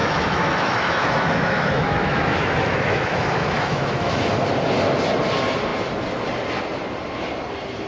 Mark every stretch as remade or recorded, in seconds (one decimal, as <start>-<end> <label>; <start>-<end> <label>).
0.0-4.3 remade; 4.3-7.9 recorded